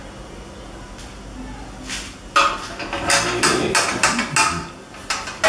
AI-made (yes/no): no